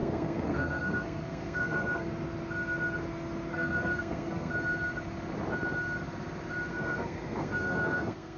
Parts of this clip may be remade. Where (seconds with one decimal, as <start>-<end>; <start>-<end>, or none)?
0.0-2.1; 3.5-4.5; 6.7-8.4